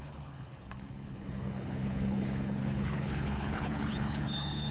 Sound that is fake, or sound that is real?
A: fake